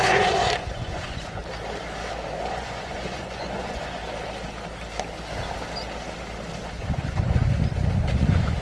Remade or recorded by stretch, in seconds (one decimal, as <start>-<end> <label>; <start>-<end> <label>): 0.0-1.4 remade; 1.4-2.5 recorded; 2.5-4.0 remade; 4.0-6.8 recorded; 6.8-7.4 remade; 7.4-8.0 recorded; 8.0-8.6 remade